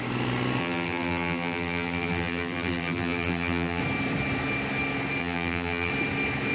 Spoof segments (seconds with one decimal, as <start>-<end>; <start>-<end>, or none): 0.6-3.8; 5.2-5.9